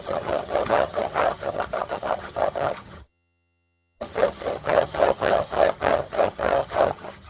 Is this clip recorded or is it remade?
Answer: remade